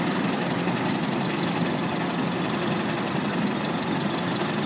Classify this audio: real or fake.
real